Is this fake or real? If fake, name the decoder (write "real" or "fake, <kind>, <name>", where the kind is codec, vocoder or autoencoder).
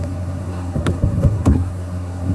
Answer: fake, codec, SNAC